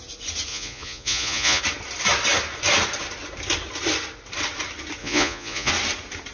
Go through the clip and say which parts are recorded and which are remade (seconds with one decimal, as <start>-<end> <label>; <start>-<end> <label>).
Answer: 0.0-0.5 recorded; 0.5-1.6 remade; 1.6-5.0 recorded; 5.0-5.7 remade; 5.7-6.3 recorded

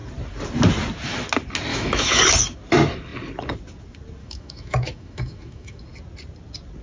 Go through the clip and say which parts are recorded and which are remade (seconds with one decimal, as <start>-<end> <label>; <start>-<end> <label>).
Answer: 0.0-1.7 recorded; 1.7-2.2 remade; 2.2-4.2 recorded; 4.2-5.8 remade; 5.8-6.8 recorded

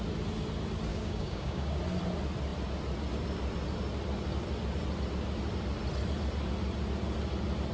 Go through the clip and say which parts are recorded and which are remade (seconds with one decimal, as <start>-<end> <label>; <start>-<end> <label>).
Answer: 0.0-0.9 recorded; 0.9-1.8 remade; 1.8-7.7 recorded